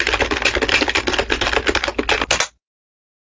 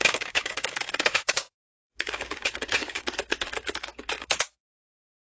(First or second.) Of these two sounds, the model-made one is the second